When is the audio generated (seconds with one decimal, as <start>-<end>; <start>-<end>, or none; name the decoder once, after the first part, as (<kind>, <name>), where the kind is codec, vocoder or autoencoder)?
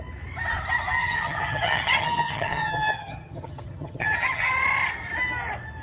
1.0-4.5 (vocoder, HiFi-GAN)